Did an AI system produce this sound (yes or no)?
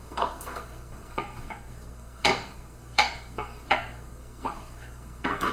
yes